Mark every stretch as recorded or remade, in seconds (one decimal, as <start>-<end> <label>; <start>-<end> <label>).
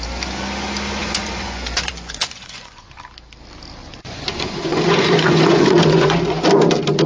0.0-1.0 recorded; 1.0-3.0 remade; 3.0-3.8 recorded; 3.8-6.4 remade; 6.4-7.1 recorded